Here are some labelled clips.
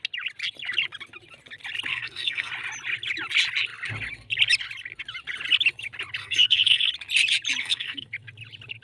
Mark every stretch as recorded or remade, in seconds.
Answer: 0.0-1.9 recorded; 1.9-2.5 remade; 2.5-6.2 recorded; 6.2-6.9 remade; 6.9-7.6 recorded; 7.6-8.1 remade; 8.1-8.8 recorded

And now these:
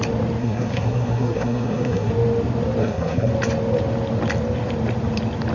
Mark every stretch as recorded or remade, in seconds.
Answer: 0.0-0.4 recorded; 0.4-2.1 remade; 2.1-2.8 recorded; 2.8-3.3 remade; 3.3-5.5 recorded

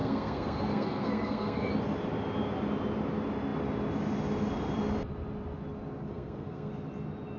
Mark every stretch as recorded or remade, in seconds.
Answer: 0.0-1.7 remade; 1.7-6.1 recorded; 6.1-6.7 remade; 6.7-7.4 recorded

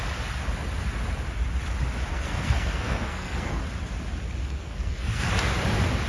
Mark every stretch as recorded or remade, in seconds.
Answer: 0.0-2.1 recorded; 2.1-3.6 remade; 3.6-4.4 recorded; 4.4-5.3 remade; 5.3-6.1 recorded

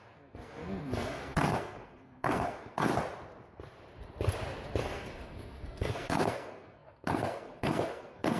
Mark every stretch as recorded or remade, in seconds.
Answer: 0.0-2.9 remade; 2.9-4.8 recorded; 4.8-8.4 remade

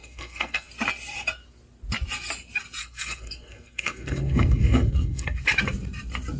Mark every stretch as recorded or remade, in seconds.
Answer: 0.0-0.7 remade; 0.7-2.8 recorded; 2.8-5.4 remade; 5.4-6.4 recorded

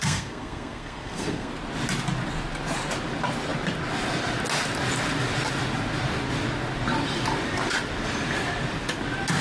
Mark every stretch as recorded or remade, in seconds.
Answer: 0.0-1.5 remade; 1.5-9.4 recorded

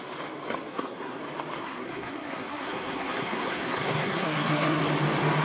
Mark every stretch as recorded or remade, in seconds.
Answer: 0.0-0.7 recorded; 0.7-1.2 remade; 1.2-1.6 recorded; 1.6-4.8 remade; 4.8-5.4 recorded